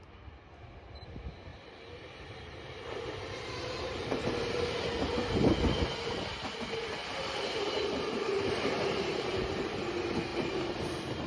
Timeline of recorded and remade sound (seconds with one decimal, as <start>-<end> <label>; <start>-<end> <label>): 0.0-1.5 recorded; 1.5-4.8 remade; 4.8-7.0 recorded; 7.0-9.8 remade; 9.8-10.3 recorded; 10.3-11.3 remade